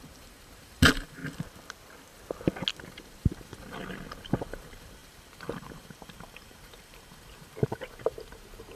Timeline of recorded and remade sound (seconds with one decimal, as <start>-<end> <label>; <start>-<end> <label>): 0.0-1.2 remade; 1.2-2.9 recorded; 2.9-8.8 remade